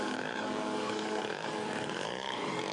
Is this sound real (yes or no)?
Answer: no